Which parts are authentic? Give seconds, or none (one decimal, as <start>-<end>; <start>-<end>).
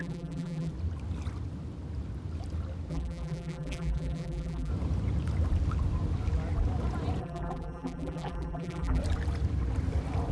0.7-2.9; 4.7-7.2; 9.0-10.3